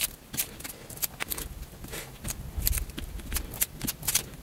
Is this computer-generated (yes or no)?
no